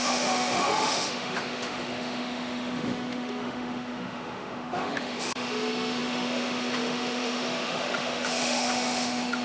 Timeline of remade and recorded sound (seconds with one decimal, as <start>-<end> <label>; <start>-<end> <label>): 0.0-9.4 remade